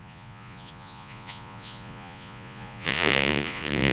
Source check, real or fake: fake